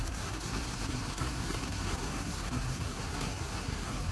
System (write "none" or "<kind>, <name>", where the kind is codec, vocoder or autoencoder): codec, SNAC